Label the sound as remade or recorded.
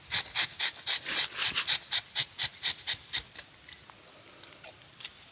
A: recorded